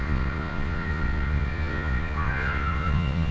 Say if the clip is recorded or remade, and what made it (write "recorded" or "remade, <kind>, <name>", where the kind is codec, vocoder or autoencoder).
remade, vocoder, Vocos